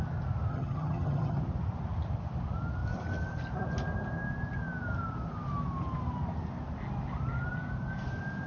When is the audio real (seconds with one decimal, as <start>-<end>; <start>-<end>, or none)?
0.0-0.5; 1.4-8.5